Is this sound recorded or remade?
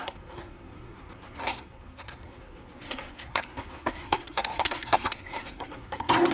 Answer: remade